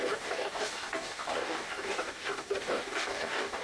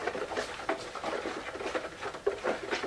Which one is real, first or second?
second